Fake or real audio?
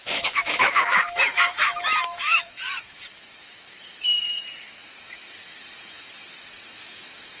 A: fake